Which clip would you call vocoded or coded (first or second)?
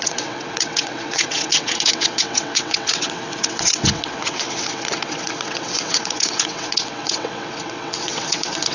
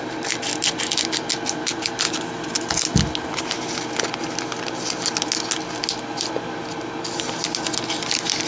first